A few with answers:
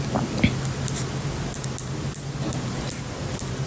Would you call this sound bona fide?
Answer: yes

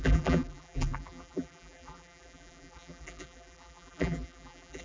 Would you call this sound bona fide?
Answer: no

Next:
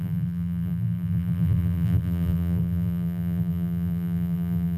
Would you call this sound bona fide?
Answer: no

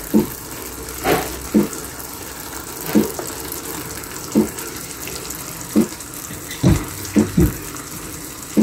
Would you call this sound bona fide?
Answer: no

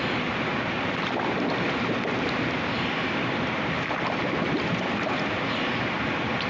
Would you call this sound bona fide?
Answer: no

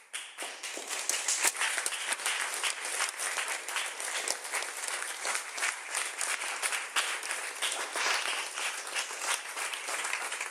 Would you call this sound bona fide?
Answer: yes